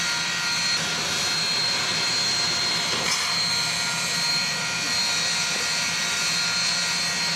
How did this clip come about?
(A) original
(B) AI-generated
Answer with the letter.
A